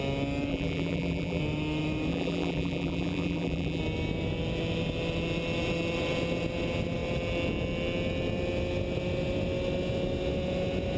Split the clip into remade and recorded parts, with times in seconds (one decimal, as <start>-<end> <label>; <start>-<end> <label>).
0.0-0.5 recorded; 0.5-1.4 remade; 1.4-2.1 recorded; 2.1-3.8 remade; 3.8-11.0 recorded